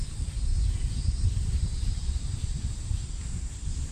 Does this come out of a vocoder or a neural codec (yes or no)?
yes